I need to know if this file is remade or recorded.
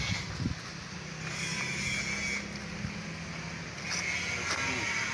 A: recorded